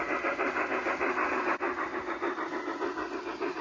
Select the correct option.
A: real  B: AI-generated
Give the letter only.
A